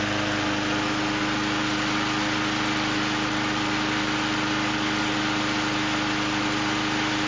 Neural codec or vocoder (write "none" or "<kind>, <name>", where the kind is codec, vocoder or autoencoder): none